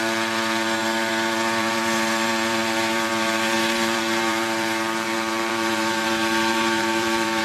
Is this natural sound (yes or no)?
no